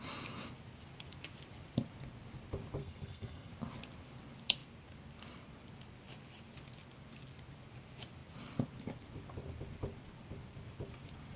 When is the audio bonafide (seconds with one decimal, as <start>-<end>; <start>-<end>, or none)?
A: 0.0-2.8; 3.5-11.4